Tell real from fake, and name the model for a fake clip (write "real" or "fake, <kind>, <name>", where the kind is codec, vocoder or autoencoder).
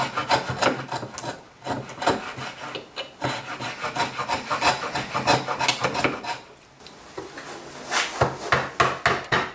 real